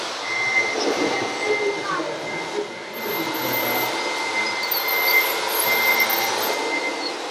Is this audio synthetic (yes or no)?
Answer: no